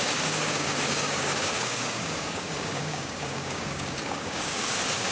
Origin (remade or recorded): remade